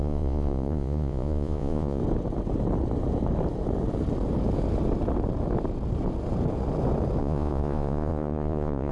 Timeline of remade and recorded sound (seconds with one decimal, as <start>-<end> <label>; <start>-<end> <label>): 0.0-2.0 remade; 2.0-7.2 recorded; 7.2-8.9 remade